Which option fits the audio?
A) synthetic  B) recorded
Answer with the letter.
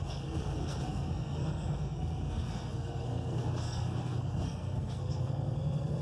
A